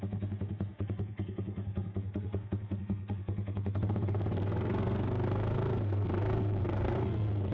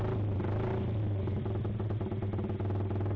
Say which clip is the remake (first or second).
first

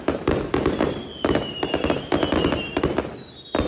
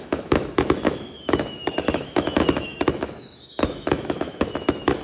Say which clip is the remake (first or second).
second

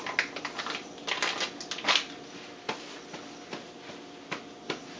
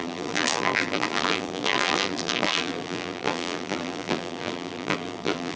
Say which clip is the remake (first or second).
second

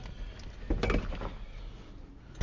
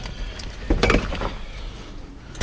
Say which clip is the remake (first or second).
second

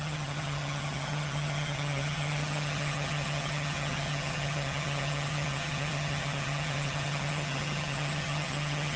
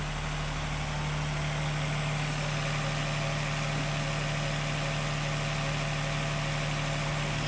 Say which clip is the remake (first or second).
first